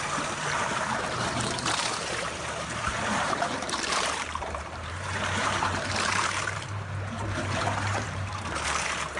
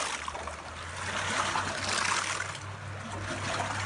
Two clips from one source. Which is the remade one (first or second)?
first